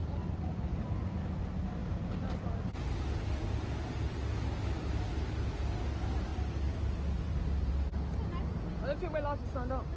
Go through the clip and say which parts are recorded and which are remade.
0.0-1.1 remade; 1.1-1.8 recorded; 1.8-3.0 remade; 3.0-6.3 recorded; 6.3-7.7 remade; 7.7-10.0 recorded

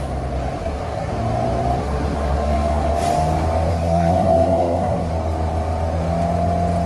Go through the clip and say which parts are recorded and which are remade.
0.0-0.6 recorded; 0.6-1.1 remade; 1.1-1.8 recorded; 1.8-2.9 remade; 2.9-3.7 recorded; 3.7-5.1 remade; 5.1-6.9 recorded

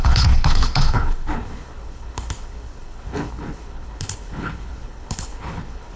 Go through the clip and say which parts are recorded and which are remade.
0.0-6.0 remade

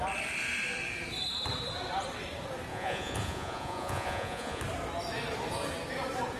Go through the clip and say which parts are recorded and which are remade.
0.0-2.7 recorded; 2.7-4.6 remade; 4.6-6.4 recorded

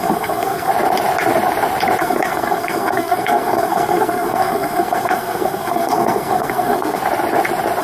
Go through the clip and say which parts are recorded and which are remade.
0.0-0.7 remade; 0.7-2.0 recorded; 2.0-7.0 remade; 7.0-7.8 recorded

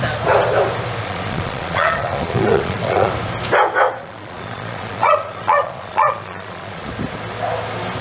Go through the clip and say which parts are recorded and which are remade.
0.0-1.0 recorded; 1.0-3.1 remade; 3.1-4.0 recorded; 4.0-6.9 remade; 6.9-8.0 recorded

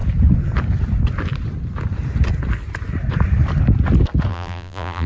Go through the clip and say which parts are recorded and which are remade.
0.0-4.3 recorded; 4.3-5.1 remade